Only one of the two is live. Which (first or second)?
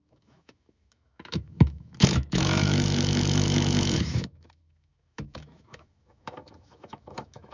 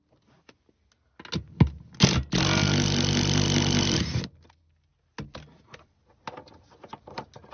second